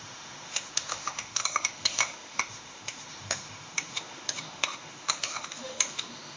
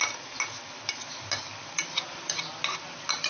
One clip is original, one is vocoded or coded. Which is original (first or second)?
second